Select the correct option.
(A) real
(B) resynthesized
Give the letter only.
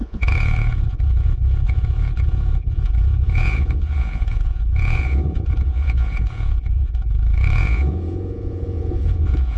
B